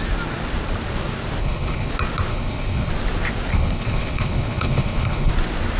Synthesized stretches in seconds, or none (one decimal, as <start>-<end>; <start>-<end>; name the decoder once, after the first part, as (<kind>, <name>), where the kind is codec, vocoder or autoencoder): 1.4-1.9 (codec, HILCodec); 2.3-2.9; 3.5-5.3